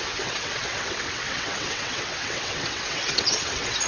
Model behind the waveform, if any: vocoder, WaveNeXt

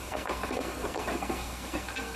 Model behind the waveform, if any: codec, SNAC